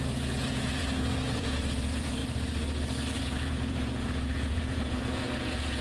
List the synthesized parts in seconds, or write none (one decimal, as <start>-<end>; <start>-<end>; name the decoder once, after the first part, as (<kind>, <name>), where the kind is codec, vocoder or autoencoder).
0.0-2.2 (vocoder, Vocos); 3.2-5.8